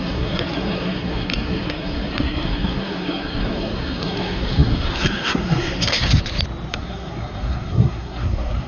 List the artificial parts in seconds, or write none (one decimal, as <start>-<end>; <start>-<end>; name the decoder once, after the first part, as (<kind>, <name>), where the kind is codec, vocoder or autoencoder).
0.0-6.1 (codec, SNAC); 6.7-8.7

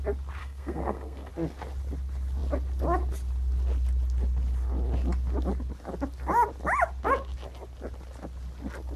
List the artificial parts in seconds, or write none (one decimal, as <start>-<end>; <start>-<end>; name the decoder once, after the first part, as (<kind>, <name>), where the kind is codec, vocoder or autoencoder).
0.4-1.3 (codec, SNAC)

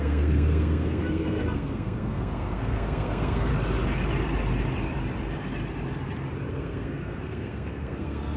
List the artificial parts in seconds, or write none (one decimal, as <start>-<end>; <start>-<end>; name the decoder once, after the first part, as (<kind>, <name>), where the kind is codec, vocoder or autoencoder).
0.0-3.5 (codec, SNAC); 6.5-8.4

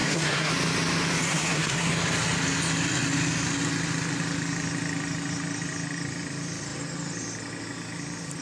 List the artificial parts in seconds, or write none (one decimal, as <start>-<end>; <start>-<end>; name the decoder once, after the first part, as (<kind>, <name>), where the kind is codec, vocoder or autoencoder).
0.0-0.5 (codec, SNAC); 1.3-1.9

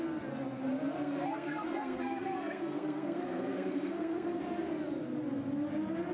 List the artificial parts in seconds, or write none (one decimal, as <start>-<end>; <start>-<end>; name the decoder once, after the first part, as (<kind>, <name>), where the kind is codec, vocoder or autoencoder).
1.0-4.4 (codec, SNAC)

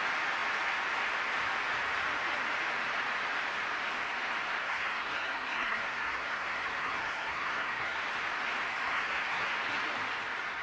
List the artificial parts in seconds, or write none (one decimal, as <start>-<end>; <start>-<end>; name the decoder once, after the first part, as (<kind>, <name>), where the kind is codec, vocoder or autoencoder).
4.6-8.0 (codec, SNAC); 8.7-9.5

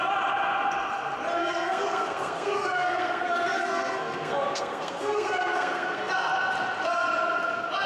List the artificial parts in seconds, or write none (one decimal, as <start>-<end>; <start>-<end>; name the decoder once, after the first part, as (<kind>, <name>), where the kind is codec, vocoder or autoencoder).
1.4-6.1 (codec, SNAC)